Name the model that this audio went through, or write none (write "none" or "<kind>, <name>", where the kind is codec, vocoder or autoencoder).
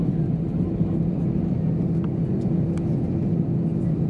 none